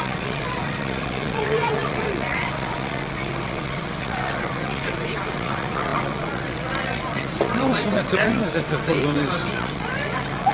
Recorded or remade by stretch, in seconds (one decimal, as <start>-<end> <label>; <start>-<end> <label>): 0.0-10.5 remade